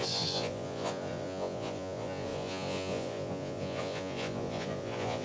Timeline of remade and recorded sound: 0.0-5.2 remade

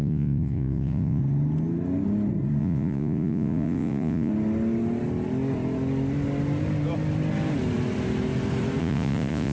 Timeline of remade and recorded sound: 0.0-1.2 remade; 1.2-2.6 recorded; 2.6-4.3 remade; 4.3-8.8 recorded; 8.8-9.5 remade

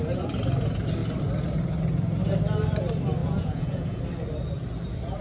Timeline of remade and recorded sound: 0.0-3.2 recorded; 3.2-4.0 remade; 4.0-5.2 recorded